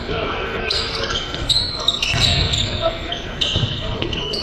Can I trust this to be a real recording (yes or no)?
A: no